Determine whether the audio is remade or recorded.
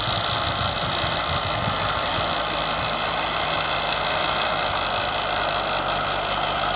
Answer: recorded